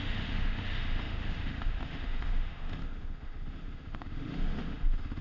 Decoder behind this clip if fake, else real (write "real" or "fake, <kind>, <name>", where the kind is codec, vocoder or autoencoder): fake, autoencoder, DAC-VAE